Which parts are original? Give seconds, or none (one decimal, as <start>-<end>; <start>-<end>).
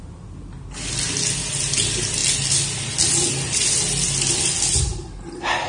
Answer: 0.0-5.7